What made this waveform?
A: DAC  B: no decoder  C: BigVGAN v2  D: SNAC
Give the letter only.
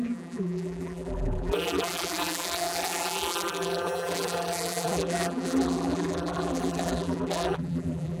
C